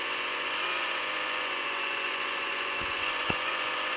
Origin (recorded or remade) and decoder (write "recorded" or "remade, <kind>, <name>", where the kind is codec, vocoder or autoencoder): remade, vocoder, Vocos